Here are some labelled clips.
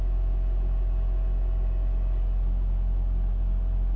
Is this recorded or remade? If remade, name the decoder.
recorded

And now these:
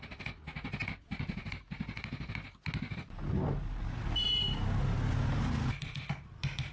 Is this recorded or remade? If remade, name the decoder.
recorded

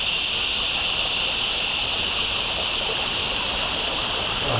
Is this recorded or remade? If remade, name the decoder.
recorded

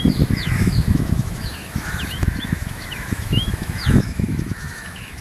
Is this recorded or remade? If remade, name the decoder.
remade, autoencoder, DAC-VAE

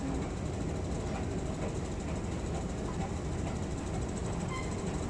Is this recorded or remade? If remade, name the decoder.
recorded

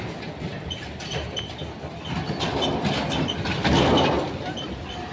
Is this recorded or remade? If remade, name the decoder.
recorded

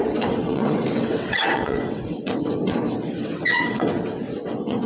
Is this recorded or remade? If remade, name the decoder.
remade, vocoder, WaveNeXt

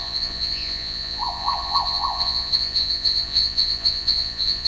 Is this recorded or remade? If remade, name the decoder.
remade, vocoder, Vocos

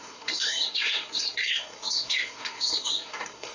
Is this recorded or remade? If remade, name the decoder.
remade, codec, SNAC